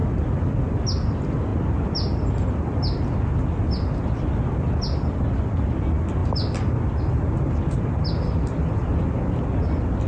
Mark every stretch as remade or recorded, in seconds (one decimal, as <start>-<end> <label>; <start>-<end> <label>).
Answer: 0.0-10.1 recorded